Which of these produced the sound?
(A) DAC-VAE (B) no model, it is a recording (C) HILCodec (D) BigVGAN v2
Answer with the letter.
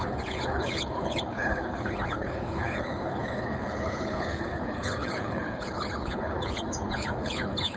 C